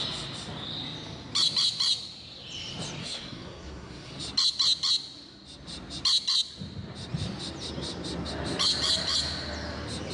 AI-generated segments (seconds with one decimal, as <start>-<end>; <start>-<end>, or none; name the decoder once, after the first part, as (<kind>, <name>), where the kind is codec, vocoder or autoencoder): 3.0-4.1 (codec, SNAC)